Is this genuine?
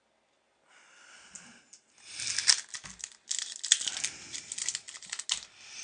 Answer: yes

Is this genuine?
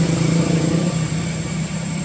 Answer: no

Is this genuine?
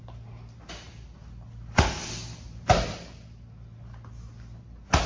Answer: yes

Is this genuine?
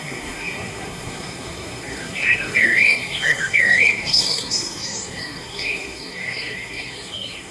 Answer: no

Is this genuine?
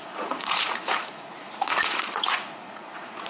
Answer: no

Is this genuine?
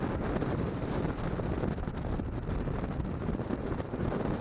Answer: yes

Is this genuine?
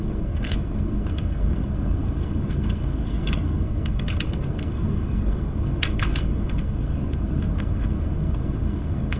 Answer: no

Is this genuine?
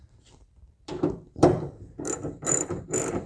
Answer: no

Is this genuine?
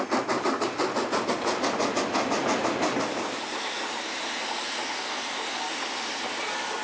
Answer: yes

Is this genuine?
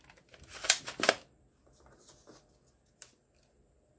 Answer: yes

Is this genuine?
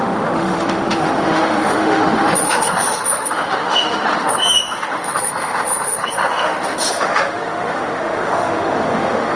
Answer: no